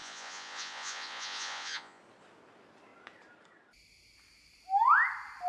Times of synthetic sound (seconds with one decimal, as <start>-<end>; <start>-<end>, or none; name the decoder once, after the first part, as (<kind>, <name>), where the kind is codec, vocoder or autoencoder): 0.0-2.0 (vocoder, Vocos)